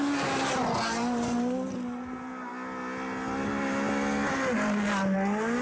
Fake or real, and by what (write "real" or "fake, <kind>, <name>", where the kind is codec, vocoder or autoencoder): real